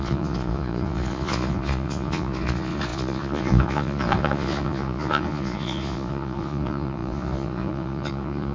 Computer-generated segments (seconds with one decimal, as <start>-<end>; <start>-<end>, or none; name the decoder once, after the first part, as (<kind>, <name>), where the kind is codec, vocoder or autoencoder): 0.0-8.5 (vocoder, Vocos)

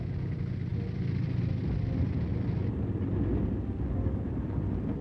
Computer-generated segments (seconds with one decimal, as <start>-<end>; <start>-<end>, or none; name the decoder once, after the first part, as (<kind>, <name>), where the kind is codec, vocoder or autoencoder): none

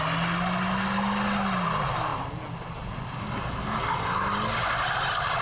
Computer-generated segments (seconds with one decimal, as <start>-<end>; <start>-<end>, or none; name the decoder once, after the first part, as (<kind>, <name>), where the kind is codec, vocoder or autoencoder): none

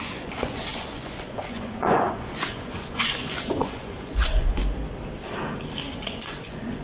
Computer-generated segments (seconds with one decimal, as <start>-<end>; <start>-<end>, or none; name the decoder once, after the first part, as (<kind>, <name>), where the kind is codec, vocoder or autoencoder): 0.0-4.6 (vocoder, Vocos); 5.9-6.8

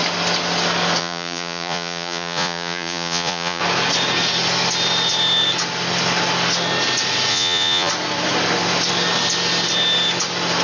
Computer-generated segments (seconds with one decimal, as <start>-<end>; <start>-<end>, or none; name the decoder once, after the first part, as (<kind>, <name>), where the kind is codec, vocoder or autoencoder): 1.0-3.6 (vocoder, Vocos); 7.3-7.9

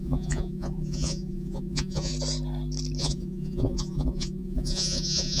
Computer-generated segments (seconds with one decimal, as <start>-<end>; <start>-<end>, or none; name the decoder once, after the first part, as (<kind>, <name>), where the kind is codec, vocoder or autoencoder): 0.0-2.1 (vocoder, Vocos); 3.0-5.4